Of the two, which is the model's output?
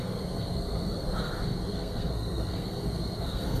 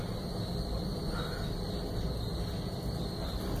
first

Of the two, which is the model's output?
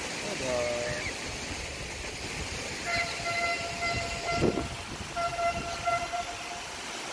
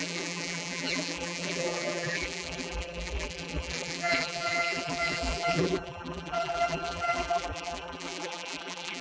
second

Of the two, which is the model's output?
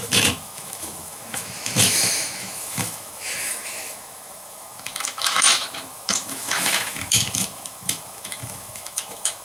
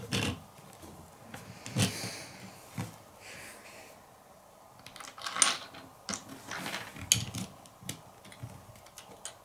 first